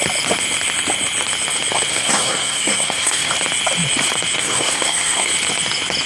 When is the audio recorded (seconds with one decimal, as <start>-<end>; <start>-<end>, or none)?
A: 0.0-1.9; 3.3-4.4; 5.3-6.1